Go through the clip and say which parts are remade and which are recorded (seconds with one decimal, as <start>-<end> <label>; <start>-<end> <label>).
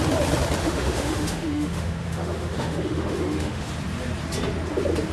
0.0-0.6 recorded; 0.6-3.7 remade; 3.7-5.1 recorded